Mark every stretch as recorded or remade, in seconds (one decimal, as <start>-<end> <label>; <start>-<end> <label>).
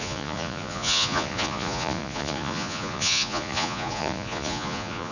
0.0-5.1 remade